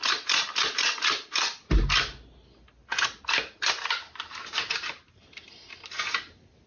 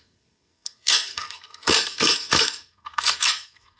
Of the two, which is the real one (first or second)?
first